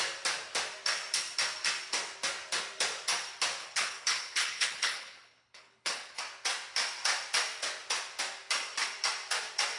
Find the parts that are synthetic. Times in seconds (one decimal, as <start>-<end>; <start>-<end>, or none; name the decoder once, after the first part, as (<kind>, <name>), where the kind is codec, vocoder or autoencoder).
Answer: 3.6-6.2 (codec, HILCodec)

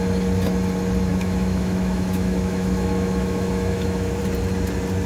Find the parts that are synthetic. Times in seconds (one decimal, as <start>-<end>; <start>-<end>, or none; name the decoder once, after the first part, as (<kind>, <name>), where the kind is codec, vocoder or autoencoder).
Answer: 1.1-4.2 (autoencoder, DAC-VAE)

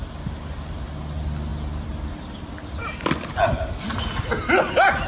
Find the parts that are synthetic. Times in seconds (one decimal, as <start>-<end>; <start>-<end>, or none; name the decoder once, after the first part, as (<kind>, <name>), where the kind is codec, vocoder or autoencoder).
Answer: none

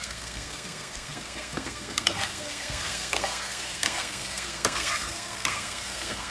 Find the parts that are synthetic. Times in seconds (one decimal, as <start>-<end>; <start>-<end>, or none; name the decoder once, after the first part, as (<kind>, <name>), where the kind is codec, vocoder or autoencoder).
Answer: 0.0-6.3 (codec, SNAC)

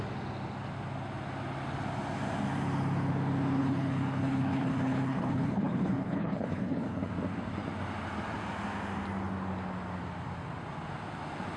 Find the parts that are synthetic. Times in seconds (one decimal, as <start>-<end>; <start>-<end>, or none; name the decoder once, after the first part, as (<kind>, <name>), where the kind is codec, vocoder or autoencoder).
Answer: 3.6-7.1 (codec, HILCodec)

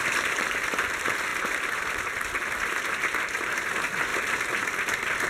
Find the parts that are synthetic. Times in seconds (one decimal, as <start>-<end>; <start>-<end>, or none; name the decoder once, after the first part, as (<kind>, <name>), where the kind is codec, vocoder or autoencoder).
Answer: 4.1-5.3 (vocoder, BigVGAN v2)